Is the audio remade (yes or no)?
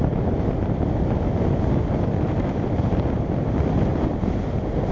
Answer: no